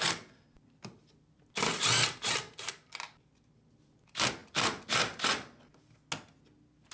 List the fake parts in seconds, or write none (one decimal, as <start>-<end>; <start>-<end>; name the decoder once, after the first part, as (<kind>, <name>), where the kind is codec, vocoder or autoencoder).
none